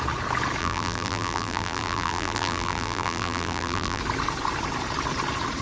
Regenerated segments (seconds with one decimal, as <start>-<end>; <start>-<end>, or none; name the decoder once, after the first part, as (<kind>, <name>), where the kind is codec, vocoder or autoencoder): 0.6-4.0 (vocoder, BigVGAN v2)